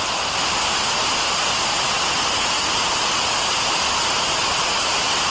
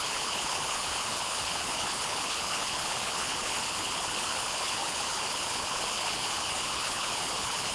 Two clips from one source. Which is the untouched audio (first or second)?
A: first